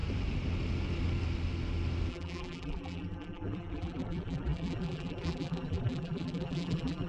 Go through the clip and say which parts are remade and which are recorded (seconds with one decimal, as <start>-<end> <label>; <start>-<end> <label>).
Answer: 0.0-2.1 recorded; 2.1-7.1 remade